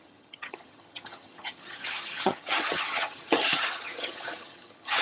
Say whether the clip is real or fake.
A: fake